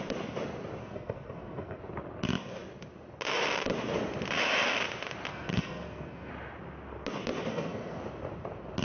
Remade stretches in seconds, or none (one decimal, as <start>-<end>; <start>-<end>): 0.8-1.8; 5.3-6.3; 7.5-8.0